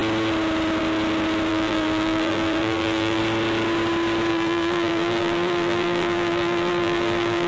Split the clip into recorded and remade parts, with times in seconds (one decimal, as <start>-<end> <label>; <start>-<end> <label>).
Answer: 0.0-1.5 recorded; 1.5-3.2 remade; 3.2-4.3 recorded; 4.3-7.5 remade